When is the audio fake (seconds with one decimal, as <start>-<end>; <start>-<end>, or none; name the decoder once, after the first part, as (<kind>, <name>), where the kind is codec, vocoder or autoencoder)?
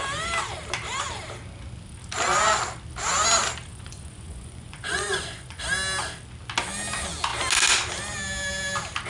3.7-5.6 (vocoder, Vocos)